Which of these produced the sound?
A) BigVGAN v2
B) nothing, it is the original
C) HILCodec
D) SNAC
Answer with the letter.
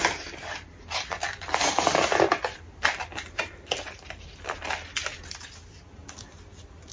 B